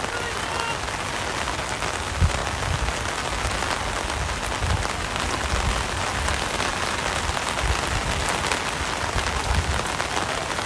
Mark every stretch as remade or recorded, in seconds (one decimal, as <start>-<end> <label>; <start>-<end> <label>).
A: 0.0-10.7 recorded